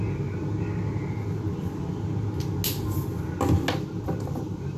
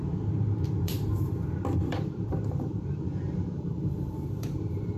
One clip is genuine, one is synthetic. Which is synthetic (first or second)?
second